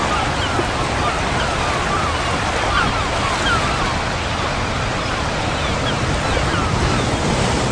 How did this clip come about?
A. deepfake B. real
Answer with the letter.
B